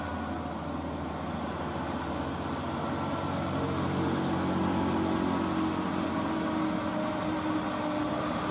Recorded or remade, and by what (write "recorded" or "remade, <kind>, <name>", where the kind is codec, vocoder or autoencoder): recorded